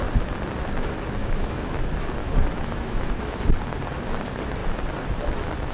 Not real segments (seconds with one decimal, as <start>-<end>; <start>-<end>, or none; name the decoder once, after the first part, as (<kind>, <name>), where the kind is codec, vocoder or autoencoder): 1.2-1.8 (autoencoder, DAC-VAE); 2.2-3.4